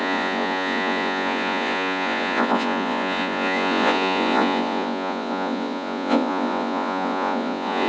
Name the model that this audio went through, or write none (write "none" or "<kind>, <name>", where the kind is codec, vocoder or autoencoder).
vocoder, Vocos